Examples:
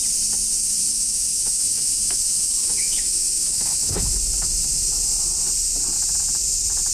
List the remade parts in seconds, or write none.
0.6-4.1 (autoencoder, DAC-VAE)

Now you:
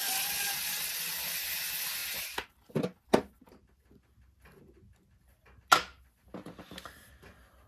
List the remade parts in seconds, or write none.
none